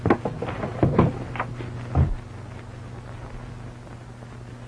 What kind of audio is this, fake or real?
real